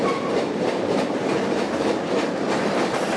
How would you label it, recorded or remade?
remade